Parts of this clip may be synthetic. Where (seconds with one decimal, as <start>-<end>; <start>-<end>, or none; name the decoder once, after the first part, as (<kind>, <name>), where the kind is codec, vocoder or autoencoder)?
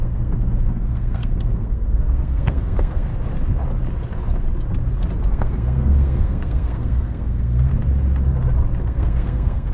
0.0-3.1 (codec, SNAC); 5.3-7.7; 8.8-9.7